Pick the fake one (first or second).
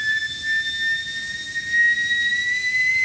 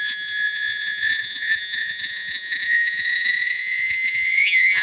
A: second